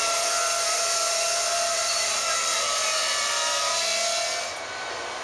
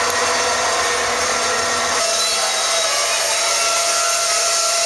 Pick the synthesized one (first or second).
first